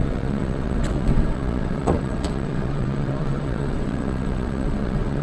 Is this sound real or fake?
fake